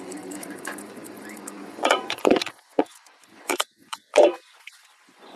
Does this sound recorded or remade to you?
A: remade